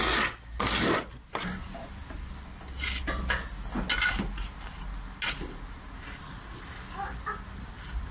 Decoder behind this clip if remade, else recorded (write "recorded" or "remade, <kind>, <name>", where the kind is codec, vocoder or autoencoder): recorded